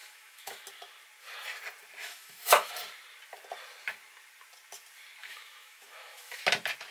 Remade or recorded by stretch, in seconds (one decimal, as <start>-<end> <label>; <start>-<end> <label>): 0.0-0.6 remade; 0.6-2.0 recorded; 2.0-2.7 remade; 2.7-5.2 recorded; 5.2-6.4 remade; 6.4-6.9 recorded

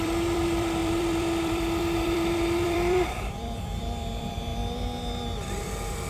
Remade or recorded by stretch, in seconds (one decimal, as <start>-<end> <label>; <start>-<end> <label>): 0.0-4.5 remade; 4.5-6.1 recorded

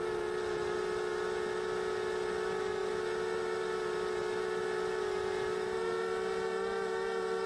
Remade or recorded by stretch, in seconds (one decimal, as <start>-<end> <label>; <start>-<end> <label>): 0.0-7.5 recorded

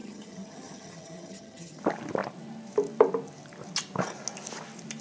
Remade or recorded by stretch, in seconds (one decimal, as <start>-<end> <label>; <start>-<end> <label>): 0.0-1.8 remade; 1.8-5.0 recorded

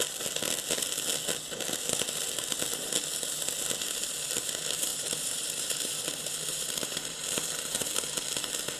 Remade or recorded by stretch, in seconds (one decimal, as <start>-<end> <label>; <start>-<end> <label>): 0.0-4.9 recorded; 4.9-8.0 remade; 8.0-8.8 recorded

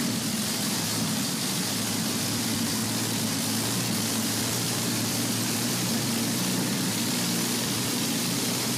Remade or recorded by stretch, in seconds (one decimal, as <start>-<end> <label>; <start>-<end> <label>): 0.0-2.8 remade; 2.8-4.1 recorded; 4.1-8.8 remade